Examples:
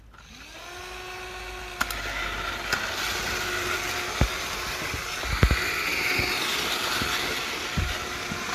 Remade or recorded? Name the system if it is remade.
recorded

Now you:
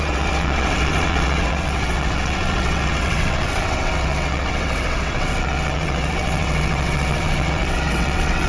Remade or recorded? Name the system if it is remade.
remade, vocoder, WaveNeXt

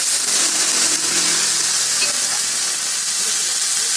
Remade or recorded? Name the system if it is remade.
recorded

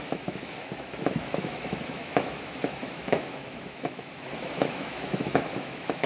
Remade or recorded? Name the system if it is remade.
remade, autoencoder, DAC-VAE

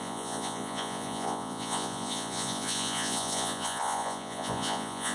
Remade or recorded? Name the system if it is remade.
remade, vocoder, Vocos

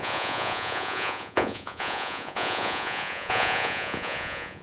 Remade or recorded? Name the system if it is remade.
remade, vocoder, Vocos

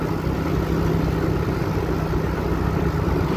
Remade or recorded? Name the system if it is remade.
recorded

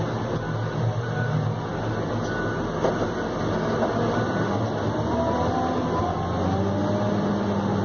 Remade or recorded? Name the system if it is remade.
recorded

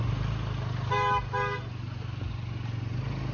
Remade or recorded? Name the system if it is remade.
recorded